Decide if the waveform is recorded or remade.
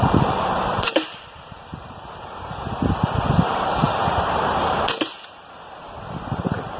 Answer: remade